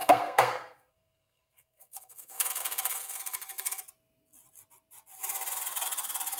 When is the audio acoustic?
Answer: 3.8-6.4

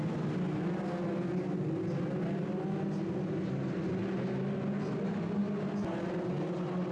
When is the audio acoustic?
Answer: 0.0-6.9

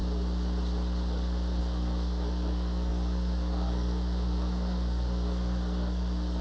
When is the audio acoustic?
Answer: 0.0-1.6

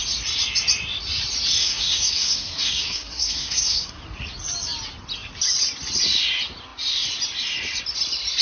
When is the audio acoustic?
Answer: 0.0-1.6; 4.0-8.4